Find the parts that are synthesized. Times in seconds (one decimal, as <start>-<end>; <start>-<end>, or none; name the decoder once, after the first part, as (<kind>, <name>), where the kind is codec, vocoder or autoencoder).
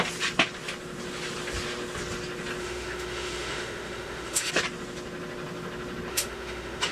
2.6-4.5 (autoencoder, DAC-VAE); 6.1-6.9